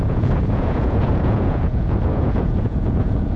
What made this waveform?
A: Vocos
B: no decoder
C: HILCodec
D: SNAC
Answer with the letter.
A